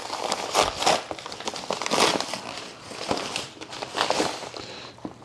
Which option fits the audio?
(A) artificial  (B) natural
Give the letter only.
B